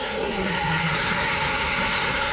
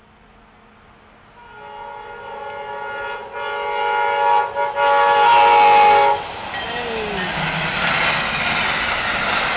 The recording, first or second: second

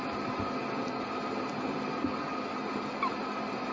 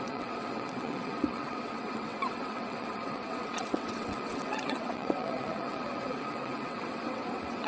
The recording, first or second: first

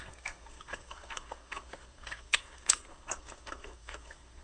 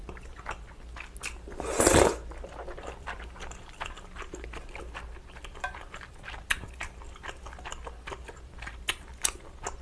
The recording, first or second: second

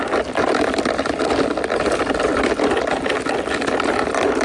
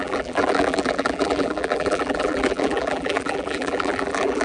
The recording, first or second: first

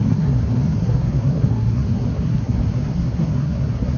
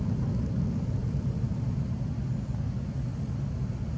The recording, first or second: second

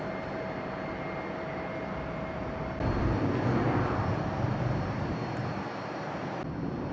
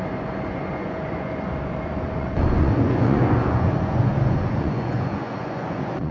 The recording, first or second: first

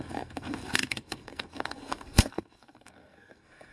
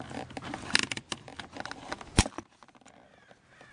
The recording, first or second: second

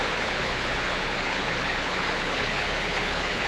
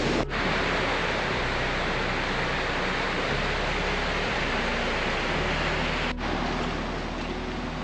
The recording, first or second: second